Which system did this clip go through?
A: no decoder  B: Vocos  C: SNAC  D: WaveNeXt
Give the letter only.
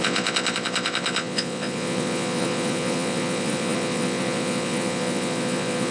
B